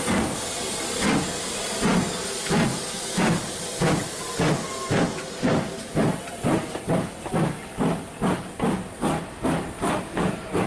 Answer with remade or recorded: recorded